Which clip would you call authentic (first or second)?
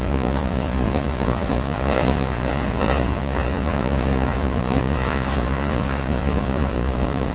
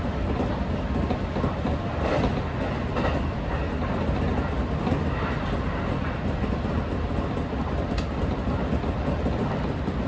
second